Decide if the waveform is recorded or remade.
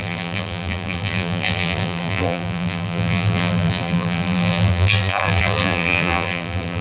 remade